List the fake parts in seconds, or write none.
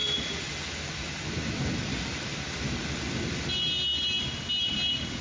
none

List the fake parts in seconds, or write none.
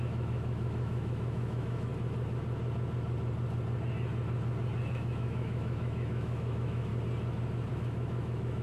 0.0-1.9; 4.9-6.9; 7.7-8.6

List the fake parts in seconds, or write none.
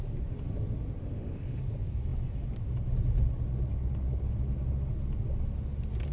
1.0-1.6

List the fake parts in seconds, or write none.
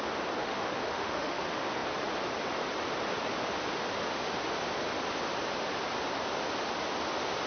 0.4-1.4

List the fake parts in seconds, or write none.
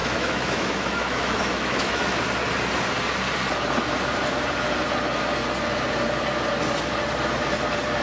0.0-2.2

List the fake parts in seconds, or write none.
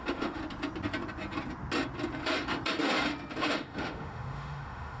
0.0-0.4; 3.4-5.0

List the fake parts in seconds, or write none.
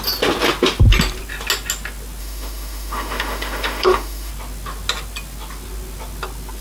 2.2-4.3